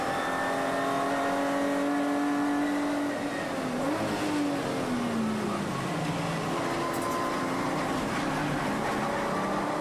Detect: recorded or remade recorded